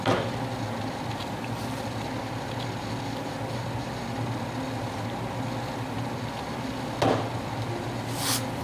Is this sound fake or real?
real